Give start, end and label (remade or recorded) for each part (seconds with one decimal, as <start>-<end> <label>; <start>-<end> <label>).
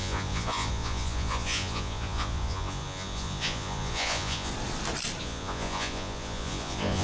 0.0-4.5 remade; 4.5-5.2 recorded; 5.2-7.0 remade